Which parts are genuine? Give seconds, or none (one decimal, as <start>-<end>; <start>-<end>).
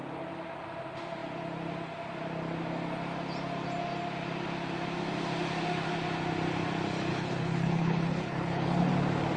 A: 0.0-7.1; 8.9-9.4